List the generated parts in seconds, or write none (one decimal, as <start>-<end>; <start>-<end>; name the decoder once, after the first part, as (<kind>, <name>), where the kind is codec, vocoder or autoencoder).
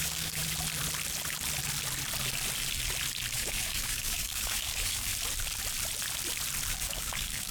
0.0-0.4 (codec, DAC); 3.3-5.1; 6.7-7.5